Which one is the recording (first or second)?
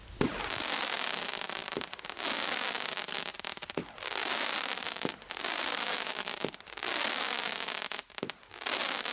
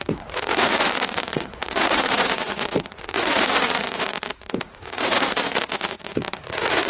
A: first